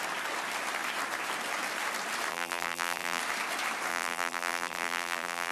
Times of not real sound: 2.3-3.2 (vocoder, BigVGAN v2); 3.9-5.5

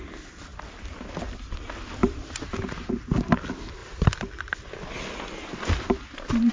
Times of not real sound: 2.0-2.5 (vocoder, BigVGAN v2)

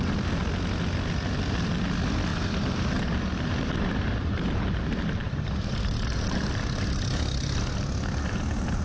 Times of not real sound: 2.3-7.4 (vocoder, BigVGAN v2)

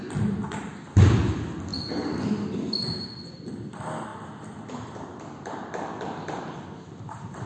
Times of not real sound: 1.7-3.5 (vocoder, BigVGAN v2)

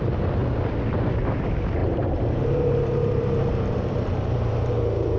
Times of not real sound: 1.8-5.2 (vocoder, BigVGAN v2)